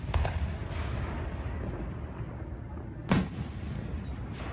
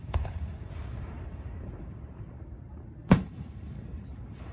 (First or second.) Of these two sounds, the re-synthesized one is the second